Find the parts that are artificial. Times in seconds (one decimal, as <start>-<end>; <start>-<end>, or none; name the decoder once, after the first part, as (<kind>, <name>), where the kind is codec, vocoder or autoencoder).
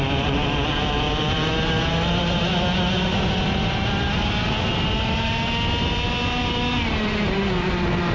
none